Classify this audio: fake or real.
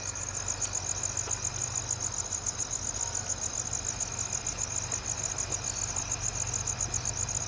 real